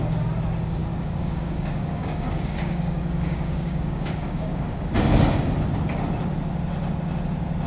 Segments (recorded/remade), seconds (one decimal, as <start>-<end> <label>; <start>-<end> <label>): 0.0-0.8 recorded; 0.8-4.9 remade; 4.9-7.7 recorded